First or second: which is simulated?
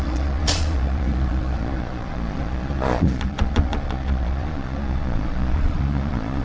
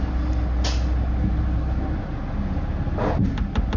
first